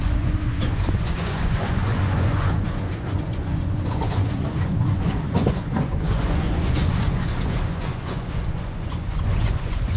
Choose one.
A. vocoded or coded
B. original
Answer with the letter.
A